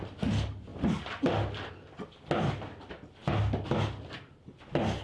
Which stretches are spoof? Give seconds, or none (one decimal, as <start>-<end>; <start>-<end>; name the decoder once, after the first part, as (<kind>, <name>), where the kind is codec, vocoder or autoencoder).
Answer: none